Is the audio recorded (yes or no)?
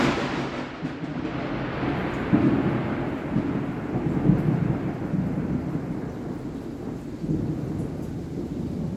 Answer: yes